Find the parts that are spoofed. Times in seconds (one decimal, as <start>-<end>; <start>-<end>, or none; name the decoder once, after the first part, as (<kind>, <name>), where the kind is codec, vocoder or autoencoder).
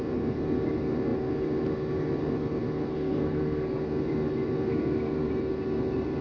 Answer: 2.9-3.8 (codec, SNAC); 4.7-5.3